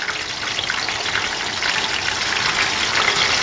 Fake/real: real